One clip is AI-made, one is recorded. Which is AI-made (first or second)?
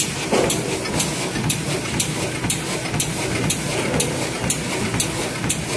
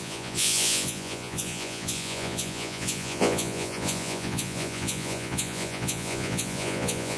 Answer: second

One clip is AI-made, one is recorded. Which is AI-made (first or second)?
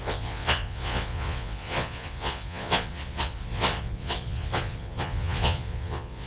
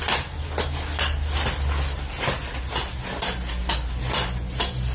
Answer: first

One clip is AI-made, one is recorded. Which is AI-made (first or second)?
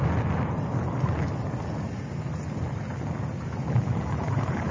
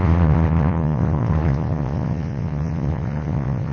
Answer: second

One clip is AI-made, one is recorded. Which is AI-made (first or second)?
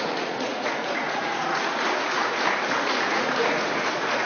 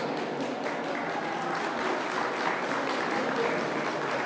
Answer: first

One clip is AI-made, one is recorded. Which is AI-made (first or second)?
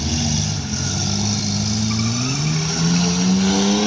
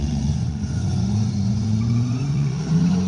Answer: second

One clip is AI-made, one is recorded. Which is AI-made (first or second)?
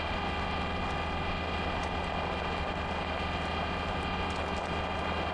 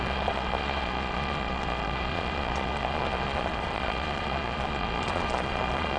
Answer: second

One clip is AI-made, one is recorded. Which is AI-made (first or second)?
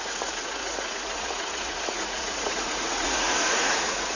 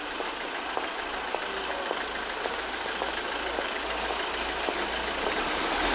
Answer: first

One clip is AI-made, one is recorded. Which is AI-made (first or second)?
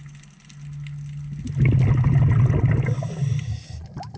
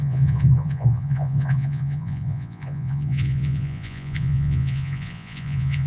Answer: second